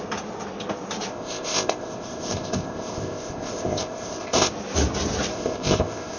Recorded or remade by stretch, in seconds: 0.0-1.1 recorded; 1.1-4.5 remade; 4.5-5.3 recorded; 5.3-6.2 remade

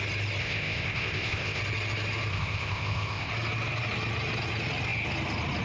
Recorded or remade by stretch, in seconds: 0.0-0.4 recorded; 0.4-1.6 remade; 1.6-2.3 recorded; 2.3-3.3 remade; 3.3-5.6 recorded

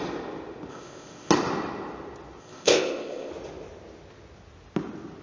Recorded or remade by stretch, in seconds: 0.0-0.7 recorded; 0.7-1.3 remade; 1.3-2.4 recorded; 2.4-3.3 remade; 3.3-5.2 recorded

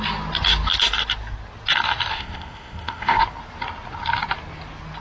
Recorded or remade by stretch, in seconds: 0.0-2.1 recorded; 2.1-3.2 remade; 3.2-5.0 recorded

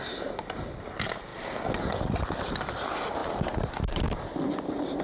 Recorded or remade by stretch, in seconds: 0.0-5.0 recorded

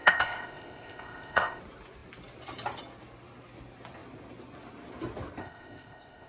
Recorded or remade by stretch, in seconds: 0.0-1.6 remade; 1.6-5.4 recorded; 5.4-6.3 remade

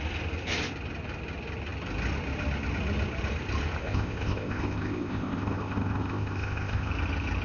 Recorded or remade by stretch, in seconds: 0.0-3.8 recorded; 3.8-6.9 remade; 6.9-7.4 recorded